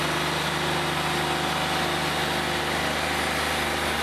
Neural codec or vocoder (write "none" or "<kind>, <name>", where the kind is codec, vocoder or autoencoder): none